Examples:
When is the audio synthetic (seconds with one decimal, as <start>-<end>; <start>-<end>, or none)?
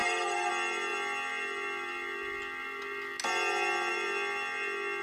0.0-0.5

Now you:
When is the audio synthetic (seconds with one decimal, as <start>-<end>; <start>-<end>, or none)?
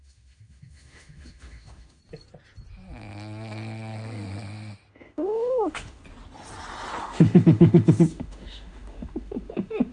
0.0-2.0; 4.9-6.0; 7.0-9.9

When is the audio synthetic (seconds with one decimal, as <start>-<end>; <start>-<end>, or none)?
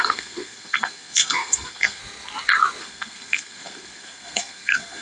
0.0-2.0; 2.8-5.0